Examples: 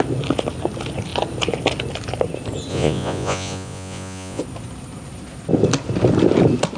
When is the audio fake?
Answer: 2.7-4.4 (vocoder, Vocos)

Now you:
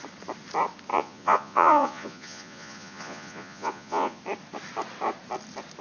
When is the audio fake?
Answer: 0.9-4.2 (vocoder, Vocos)

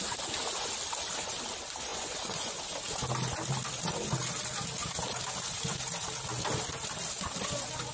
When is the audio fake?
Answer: 1.9-2.6 (vocoder, Vocos)

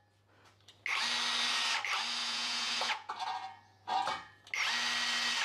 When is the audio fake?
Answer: 2.2-3.1 (vocoder, Vocos)

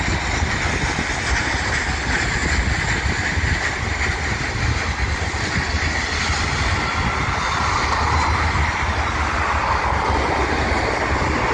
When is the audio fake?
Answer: none

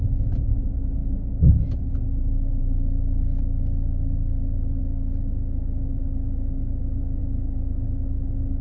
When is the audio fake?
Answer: none